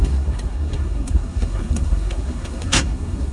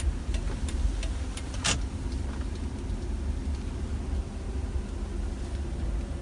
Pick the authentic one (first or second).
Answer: second